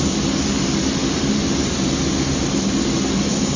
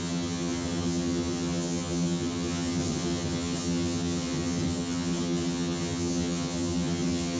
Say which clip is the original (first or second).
first